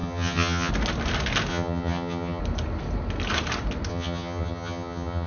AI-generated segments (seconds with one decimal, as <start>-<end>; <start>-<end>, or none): 0.0-0.7; 1.5-2.4; 3.9-5.3